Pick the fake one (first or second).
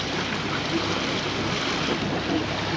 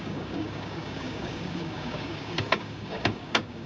second